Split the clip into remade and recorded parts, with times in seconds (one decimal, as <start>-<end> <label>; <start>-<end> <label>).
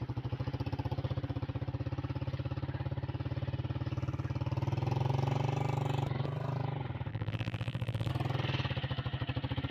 0.0-7.1 recorded; 7.1-8.1 remade; 8.1-9.7 recorded